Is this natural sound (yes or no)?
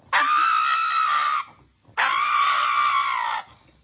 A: no